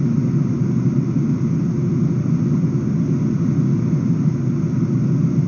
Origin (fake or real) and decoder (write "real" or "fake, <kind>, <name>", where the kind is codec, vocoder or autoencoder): real